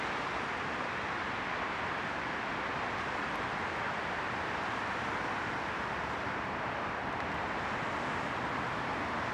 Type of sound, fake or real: real